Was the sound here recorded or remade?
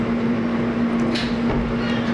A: recorded